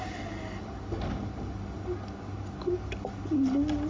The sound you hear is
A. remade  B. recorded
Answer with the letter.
B